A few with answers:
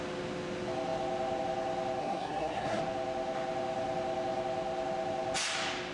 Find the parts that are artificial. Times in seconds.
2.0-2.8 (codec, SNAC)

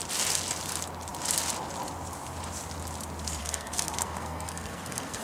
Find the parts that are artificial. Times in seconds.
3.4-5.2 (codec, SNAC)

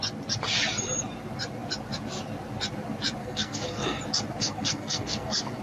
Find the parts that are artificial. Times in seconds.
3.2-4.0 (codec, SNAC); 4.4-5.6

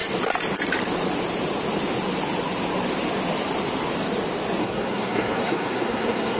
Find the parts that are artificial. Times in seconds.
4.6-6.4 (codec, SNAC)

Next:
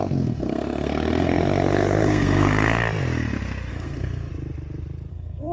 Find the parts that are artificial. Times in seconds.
0.0-2.8 (codec, SNAC); 3.7-4.3; 5.1-5.5

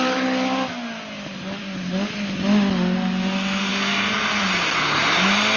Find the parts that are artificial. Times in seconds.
none

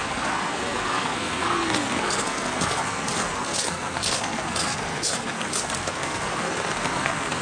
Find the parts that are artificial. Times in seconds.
0.0-7.4 (codec, SNAC)

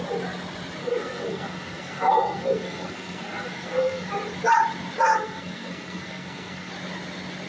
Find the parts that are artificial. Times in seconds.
0.8-4.1 (codec, SNAC); 5.1-6.7